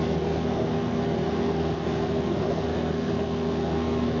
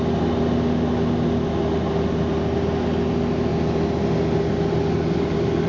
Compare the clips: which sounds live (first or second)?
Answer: second